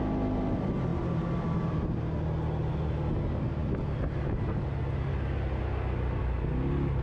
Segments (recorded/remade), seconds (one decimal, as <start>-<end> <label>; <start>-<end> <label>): 0.0-0.9 recorded; 0.9-1.9 remade; 1.9-7.0 recorded